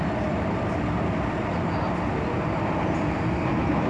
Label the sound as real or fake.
real